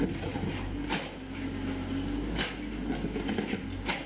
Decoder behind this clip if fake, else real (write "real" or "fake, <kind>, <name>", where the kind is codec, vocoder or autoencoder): real